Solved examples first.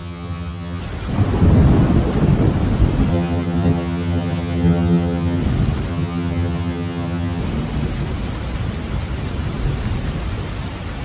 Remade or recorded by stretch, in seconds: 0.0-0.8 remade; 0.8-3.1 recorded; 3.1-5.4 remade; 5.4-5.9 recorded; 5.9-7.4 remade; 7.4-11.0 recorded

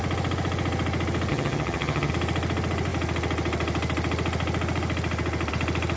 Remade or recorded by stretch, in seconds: 0.0-1.3 recorded; 1.3-2.1 remade; 2.1-6.0 recorded

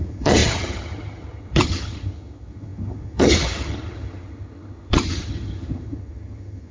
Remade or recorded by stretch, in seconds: 0.0-6.7 remade